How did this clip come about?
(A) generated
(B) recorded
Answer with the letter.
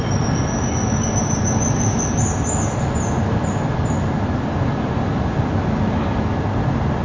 B